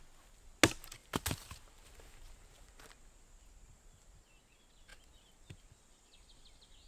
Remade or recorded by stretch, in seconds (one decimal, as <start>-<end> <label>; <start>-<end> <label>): 0.0-6.9 recorded